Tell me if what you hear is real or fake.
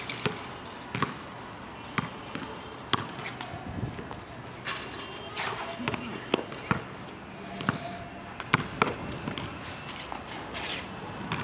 real